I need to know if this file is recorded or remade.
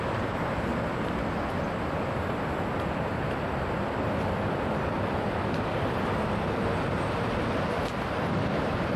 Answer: remade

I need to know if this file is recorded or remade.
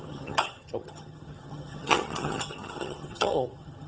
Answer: remade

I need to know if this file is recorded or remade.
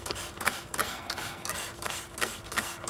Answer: remade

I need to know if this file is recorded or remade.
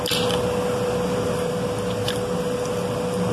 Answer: recorded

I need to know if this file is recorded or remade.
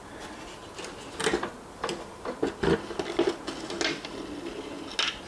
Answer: recorded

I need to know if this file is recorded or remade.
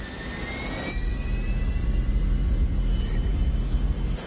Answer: recorded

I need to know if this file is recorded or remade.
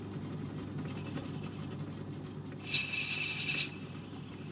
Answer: recorded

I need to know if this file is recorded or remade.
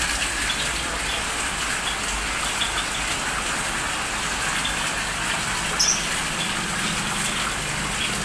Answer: recorded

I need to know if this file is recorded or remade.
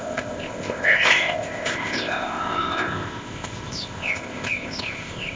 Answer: remade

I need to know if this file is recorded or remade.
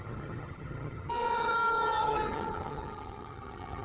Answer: remade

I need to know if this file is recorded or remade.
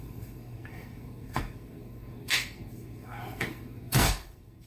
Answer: remade